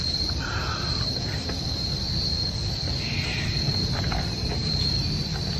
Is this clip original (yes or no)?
no